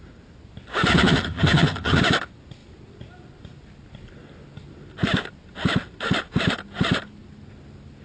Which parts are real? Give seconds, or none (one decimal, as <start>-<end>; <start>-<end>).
0.0-0.9; 2.0-8.0